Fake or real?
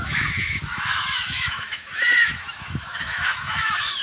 fake